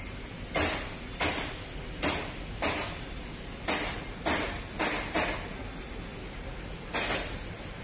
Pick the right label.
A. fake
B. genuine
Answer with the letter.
B